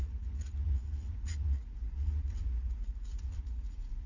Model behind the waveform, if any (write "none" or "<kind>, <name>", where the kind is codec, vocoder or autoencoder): vocoder, Vocos